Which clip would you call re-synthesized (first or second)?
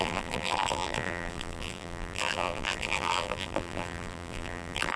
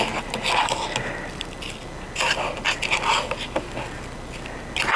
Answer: first